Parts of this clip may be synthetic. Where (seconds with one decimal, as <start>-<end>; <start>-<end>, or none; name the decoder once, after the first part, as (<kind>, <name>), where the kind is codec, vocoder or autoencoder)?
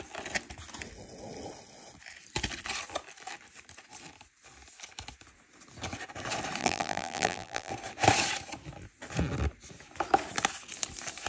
6.6-7.7 (vocoder, BigVGAN v2)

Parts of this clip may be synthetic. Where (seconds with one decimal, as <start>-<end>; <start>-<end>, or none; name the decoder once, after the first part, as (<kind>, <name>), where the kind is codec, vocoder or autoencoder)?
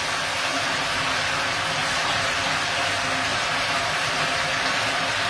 0.5-1.0 (vocoder, BigVGAN v2); 1.8-2.3; 3.3-5.3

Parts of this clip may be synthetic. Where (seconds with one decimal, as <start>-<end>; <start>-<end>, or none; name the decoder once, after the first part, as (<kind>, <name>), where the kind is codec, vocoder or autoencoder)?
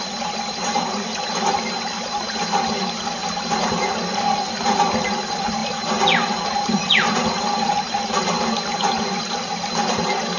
none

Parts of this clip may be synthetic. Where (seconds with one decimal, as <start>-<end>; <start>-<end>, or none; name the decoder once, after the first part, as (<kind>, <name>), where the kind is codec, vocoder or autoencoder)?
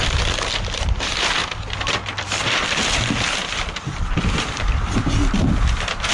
1.4-5.1 (vocoder, BigVGAN v2)